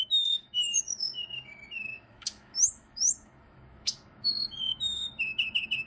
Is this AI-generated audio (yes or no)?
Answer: yes